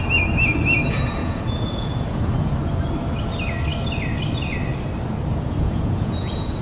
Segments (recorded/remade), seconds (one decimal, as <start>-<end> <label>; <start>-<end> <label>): 0.0-1.2 recorded; 1.2-2.5 remade; 2.5-5.3 recorded; 5.3-6.6 remade